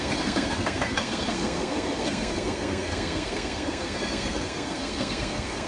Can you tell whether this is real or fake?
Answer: fake